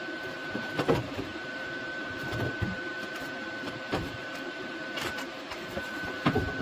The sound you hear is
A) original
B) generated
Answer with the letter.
B